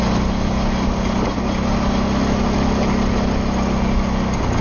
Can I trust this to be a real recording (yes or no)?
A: yes